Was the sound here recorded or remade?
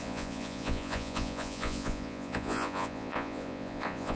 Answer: remade